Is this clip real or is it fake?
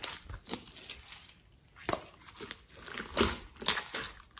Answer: real